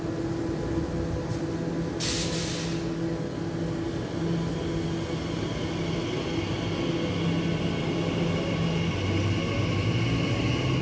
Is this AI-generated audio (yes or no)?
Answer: no